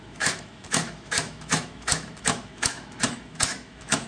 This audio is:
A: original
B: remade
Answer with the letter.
B